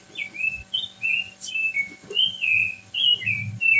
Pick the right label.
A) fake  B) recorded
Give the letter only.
B